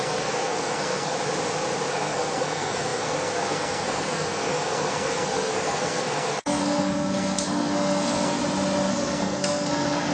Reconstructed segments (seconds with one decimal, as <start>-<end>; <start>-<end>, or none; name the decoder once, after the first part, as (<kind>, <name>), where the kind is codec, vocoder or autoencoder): 0.0-1.1 (codec, SNAC); 1.9-8.4; 8.9-10.1